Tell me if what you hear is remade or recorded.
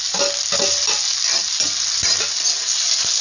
recorded